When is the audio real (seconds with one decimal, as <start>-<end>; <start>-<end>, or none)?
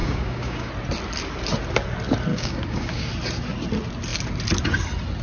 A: 0.7-2.3; 3.1-5.2